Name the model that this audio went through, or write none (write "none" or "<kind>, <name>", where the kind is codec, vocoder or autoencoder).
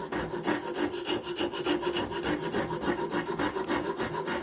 none